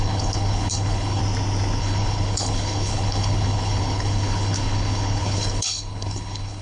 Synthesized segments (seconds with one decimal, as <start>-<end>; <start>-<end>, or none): 0.0-1.2; 1.8-6.6